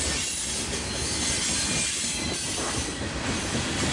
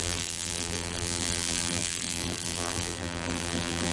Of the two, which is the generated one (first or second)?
second